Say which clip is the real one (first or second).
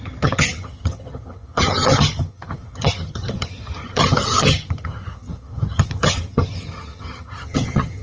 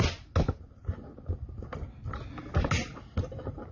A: second